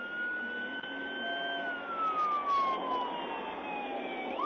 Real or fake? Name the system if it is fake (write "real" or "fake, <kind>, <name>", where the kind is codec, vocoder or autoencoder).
real